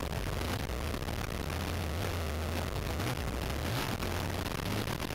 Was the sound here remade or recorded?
recorded